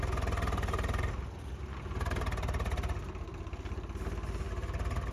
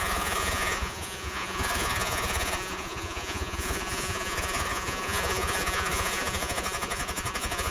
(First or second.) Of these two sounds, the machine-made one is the second